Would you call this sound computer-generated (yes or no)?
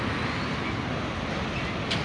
no